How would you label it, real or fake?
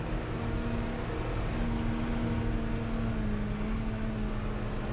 real